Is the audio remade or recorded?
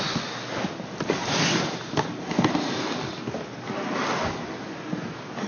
recorded